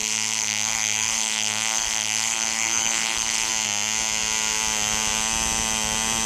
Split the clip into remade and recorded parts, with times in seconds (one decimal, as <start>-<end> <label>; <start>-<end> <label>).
0.0-3.5 remade; 3.5-6.3 recorded